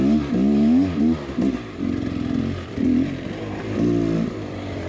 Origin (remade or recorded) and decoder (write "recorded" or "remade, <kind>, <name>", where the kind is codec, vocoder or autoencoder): recorded